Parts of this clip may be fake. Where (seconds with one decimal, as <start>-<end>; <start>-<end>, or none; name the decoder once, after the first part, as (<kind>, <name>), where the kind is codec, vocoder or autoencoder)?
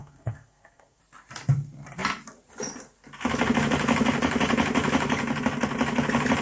0.0-1.0 (codec, SNAC)